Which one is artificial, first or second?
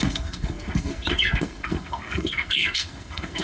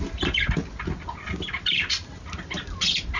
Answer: first